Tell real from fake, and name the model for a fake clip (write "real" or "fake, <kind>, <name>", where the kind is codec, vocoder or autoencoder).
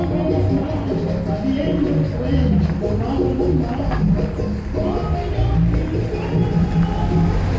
real